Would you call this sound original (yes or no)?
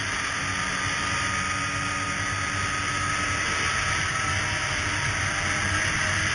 yes